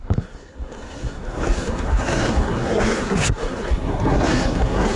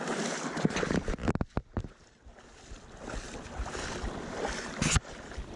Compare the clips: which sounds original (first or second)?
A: second